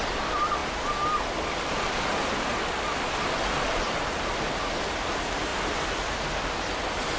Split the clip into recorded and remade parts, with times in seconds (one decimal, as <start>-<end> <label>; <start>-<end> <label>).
0.0-5.5 recorded; 5.5-7.2 remade